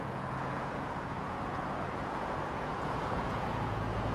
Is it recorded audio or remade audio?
remade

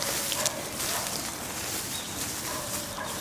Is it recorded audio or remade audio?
recorded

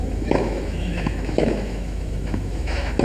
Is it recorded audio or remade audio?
remade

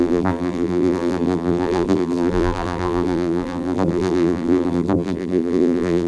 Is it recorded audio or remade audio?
remade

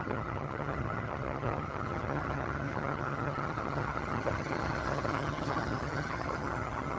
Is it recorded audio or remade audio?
remade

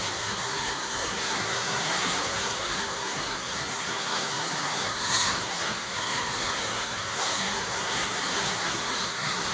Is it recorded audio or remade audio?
remade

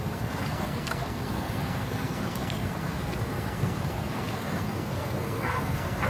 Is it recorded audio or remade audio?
remade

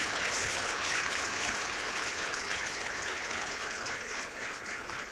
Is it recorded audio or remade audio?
remade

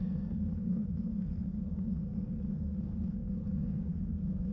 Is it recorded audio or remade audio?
remade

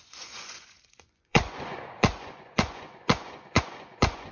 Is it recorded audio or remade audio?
remade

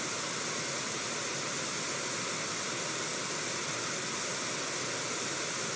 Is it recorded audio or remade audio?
recorded